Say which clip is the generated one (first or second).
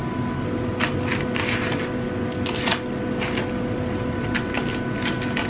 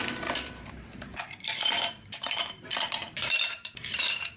second